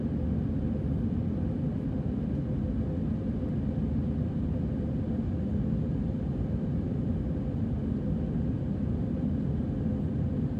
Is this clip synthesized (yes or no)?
no